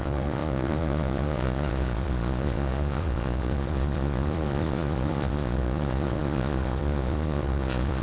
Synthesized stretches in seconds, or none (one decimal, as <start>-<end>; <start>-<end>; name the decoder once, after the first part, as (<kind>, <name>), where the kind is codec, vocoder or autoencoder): 0.0-8.0 (vocoder, Vocos)